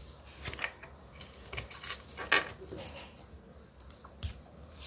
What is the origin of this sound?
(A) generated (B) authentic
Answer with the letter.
B